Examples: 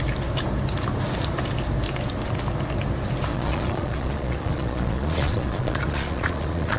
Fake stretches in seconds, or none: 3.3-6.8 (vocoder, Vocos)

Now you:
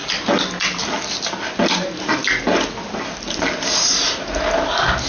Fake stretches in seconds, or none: none